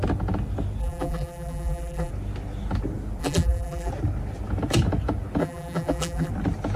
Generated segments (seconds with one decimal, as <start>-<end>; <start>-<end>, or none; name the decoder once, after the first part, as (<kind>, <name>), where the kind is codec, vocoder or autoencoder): 0.8-2.1 (vocoder, BigVGAN v2); 3.2-3.9; 5.4-6.3